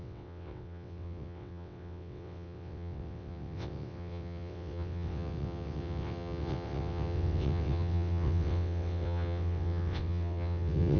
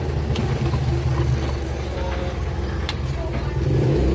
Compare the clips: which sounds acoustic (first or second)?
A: second